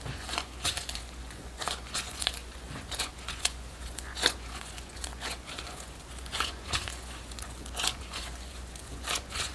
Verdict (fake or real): fake